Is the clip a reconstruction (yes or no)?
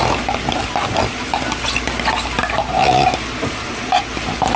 no